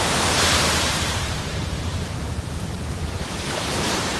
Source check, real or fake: fake